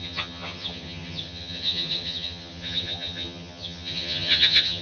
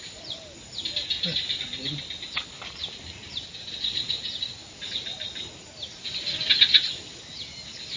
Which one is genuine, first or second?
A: second